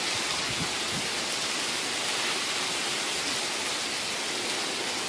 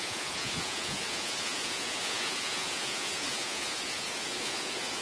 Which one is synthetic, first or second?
second